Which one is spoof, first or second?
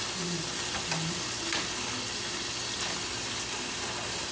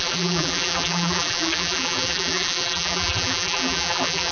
second